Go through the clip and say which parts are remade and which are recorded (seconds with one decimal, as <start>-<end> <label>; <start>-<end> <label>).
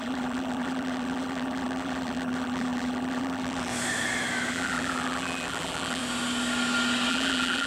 0.0-3.7 remade; 3.7-4.5 recorded; 4.5-6.0 remade; 6.0-7.1 recorded; 7.1-7.7 remade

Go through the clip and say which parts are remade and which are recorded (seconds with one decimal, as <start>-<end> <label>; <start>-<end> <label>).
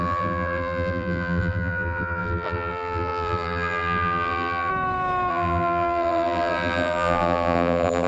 0.0-4.7 remade; 4.7-5.3 recorded; 5.3-8.1 remade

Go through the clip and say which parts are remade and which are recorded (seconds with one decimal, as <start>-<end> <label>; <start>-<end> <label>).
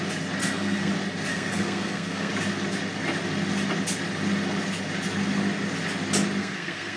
0.0-0.4 recorded; 0.4-0.9 remade; 0.9-1.3 recorded; 1.3-2.3 remade; 2.3-6.4 recorded; 6.4-7.0 remade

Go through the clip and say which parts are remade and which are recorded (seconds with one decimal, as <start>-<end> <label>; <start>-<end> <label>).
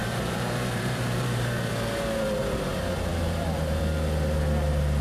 0.0-1.7 remade; 1.7-3.1 recorded; 3.1-3.8 remade; 3.8-5.0 recorded